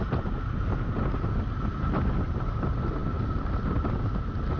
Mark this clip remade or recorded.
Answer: recorded